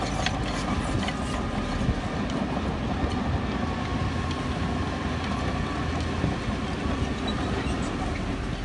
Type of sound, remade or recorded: recorded